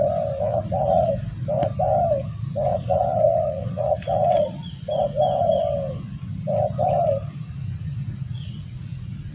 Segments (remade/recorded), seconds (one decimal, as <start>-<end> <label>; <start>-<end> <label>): 0.0-0.5 recorded; 0.5-1.1 remade; 1.1-2.7 recorded; 2.7-4.7 remade; 4.7-8.1 recorded; 8.1-9.3 remade